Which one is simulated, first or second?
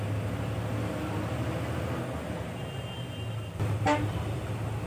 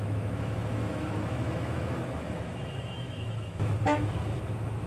second